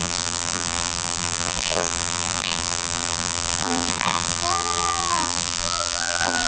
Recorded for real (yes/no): no